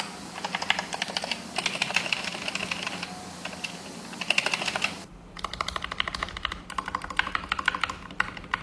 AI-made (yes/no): yes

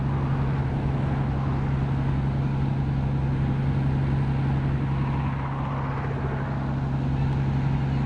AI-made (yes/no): no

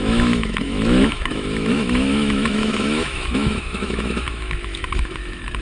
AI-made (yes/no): yes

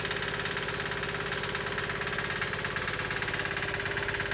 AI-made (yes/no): no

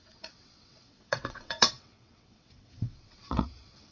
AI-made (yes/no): yes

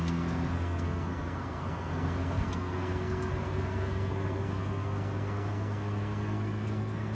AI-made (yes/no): yes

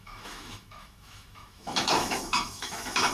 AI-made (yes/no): yes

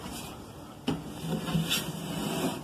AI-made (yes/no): no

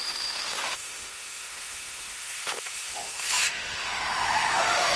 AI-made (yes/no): yes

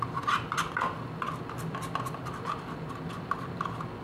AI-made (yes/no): no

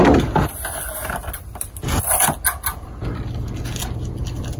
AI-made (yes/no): no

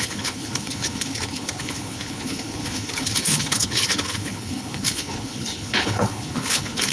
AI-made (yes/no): yes